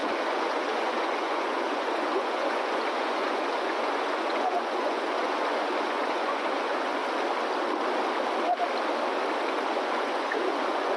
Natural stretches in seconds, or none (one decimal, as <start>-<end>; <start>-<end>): 7.0-9.7